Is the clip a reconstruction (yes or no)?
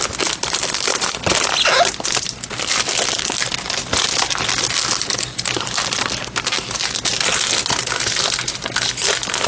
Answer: no